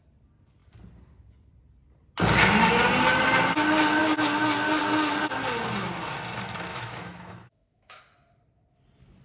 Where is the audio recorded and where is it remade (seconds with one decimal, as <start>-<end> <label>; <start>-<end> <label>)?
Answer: 0.0-6.7 recorded; 6.7-8.0 remade; 8.0-9.2 recorded